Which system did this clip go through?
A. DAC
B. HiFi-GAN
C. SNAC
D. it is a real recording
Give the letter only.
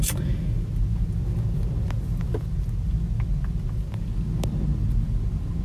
D